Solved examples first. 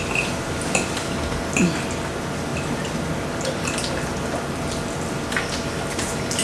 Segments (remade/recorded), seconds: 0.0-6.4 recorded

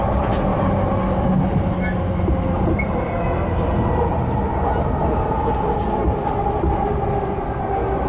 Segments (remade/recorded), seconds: 0.0-8.1 recorded